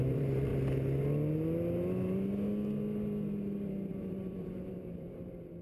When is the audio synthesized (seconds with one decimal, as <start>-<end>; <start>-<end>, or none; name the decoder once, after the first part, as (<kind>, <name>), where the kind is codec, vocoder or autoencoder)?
0.0-0.5 (vocoder, BigVGAN v2); 3.9-5.6